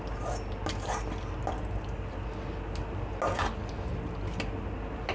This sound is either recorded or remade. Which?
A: recorded